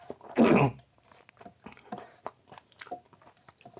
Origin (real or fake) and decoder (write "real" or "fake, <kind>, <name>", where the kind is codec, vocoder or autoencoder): real